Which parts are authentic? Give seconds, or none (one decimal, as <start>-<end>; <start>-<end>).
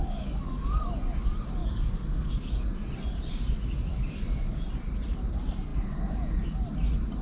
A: 0.9-1.6; 2.6-3.9; 4.6-7.2